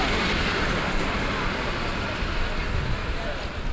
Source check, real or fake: fake